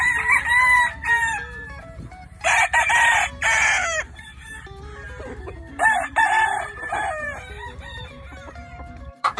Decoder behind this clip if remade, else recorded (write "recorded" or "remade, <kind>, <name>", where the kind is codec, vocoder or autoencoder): remade, vocoder, BigVGAN v2